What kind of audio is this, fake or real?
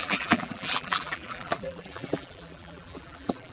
fake